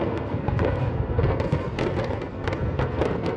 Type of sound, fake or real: fake